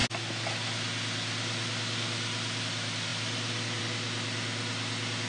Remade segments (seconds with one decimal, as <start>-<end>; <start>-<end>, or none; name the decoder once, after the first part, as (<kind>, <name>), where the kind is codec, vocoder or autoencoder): none